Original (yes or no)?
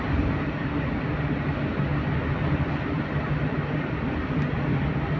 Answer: yes